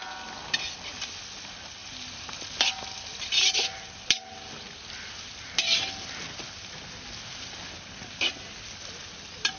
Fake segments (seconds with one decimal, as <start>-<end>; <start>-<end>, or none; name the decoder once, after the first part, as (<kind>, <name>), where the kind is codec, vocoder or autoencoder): none